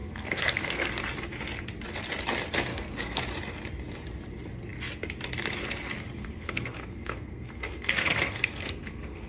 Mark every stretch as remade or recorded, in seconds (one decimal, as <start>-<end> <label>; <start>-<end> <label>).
0.0-0.9 remade; 0.9-2.7 recorded; 2.7-3.2 remade; 3.2-6.2 recorded; 6.2-9.3 remade